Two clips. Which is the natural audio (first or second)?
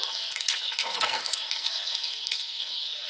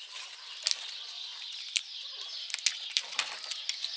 second